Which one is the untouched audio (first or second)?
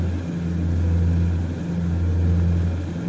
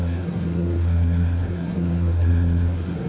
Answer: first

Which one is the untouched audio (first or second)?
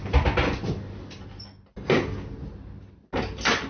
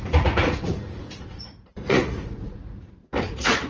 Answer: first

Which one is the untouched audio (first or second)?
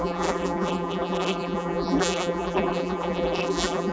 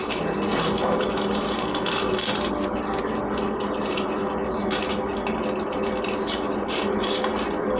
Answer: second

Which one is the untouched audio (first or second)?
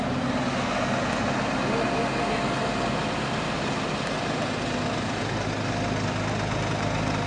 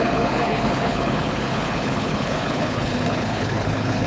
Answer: first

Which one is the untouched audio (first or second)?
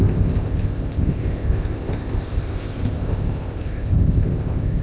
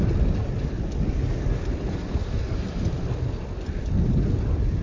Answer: second